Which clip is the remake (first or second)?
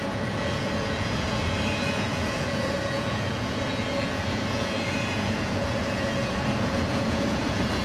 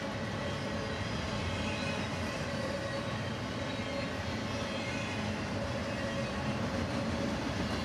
first